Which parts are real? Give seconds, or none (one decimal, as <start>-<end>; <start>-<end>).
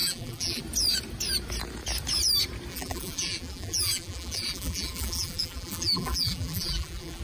0.6-2.7